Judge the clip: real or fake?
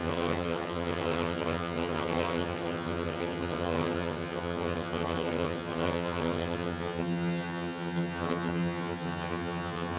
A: fake